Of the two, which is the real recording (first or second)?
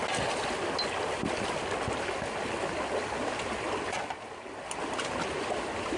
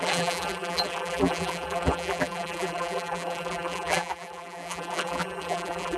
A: first